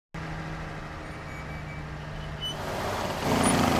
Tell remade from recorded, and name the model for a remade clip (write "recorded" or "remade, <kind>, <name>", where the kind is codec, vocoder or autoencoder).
recorded